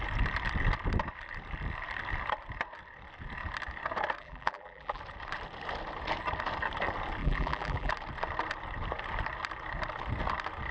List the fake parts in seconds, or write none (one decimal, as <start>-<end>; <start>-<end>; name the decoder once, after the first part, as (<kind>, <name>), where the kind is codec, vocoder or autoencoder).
4.2-5.0 (vocoder, BigVGAN v2); 7.2-7.9